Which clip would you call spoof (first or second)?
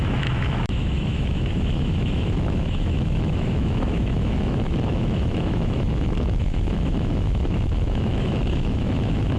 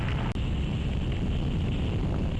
first